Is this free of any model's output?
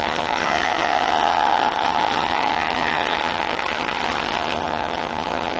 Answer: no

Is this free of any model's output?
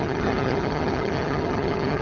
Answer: no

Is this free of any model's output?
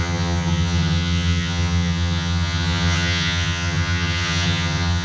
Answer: no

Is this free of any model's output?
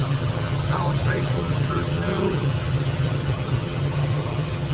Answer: no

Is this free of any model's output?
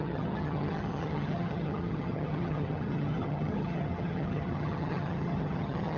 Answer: no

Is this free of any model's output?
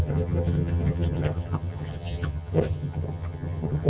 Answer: no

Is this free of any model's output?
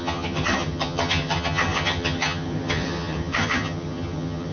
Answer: no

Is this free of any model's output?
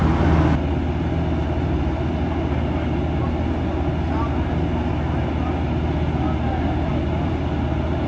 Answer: yes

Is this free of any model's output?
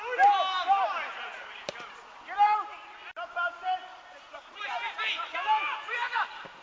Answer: yes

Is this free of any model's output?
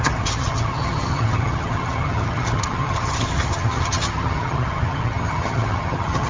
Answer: no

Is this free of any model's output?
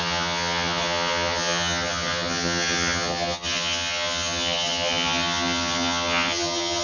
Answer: no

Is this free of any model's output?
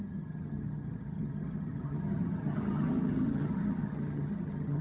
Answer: no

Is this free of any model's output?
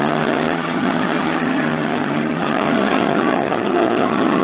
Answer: no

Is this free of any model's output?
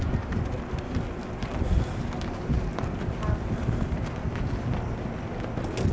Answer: yes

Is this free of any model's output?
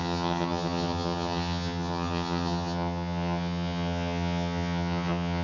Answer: no